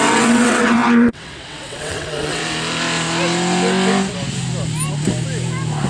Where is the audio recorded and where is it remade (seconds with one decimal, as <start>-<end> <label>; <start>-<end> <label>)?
0.0-2.4 remade; 2.4-5.9 recorded

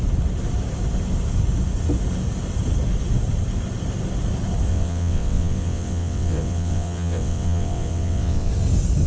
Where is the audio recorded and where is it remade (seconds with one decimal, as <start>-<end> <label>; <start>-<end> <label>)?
0.0-4.7 recorded; 4.7-8.5 remade; 8.5-9.1 recorded

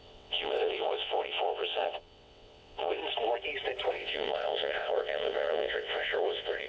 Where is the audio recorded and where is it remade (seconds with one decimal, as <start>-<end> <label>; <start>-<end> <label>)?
0.0-3.0 remade; 3.0-3.9 recorded; 3.9-6.7 remade